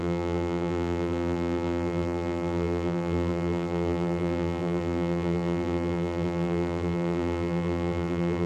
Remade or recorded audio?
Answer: remade